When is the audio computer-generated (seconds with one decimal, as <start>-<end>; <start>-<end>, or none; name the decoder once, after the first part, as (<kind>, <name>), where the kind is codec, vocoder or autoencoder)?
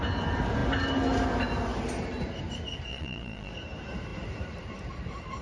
2.9-3.5 (vocoder, Vocos)